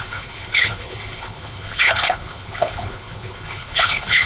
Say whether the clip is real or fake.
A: fake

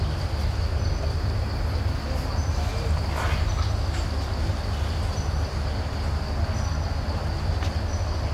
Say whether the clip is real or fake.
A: real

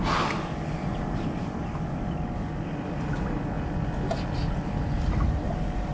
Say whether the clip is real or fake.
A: real